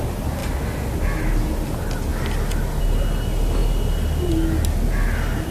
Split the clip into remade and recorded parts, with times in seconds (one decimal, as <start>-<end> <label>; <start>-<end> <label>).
0.0-5.5 recorded